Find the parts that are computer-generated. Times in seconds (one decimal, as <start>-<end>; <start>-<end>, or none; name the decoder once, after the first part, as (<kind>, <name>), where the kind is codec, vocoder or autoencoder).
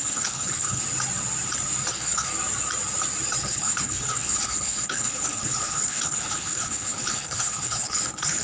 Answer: 0.0-0.8 (codec, HILCodec); 1.9-2.3; 3.4-8.4